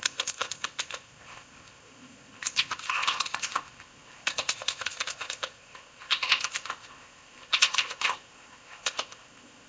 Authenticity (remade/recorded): remade